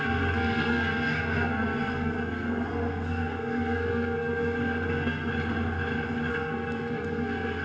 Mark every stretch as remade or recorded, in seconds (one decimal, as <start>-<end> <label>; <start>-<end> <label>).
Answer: 0.0-5.3 remade; 5.3-6.3 recorded; 6.3-7.6 remade